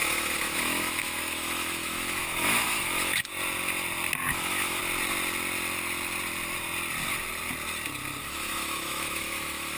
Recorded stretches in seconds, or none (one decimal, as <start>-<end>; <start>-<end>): 3.3-4.3; 4.8-8.2